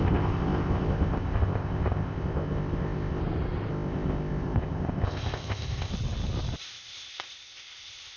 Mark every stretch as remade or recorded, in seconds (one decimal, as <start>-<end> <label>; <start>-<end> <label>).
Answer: 0.0-3.2 remade; 3.2-3.7 recorded; 3.7-5.9 remade; 5.9-6.6 recorded; 6.6-8.2 remade